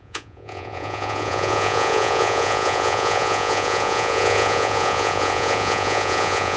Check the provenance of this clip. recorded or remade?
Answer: remade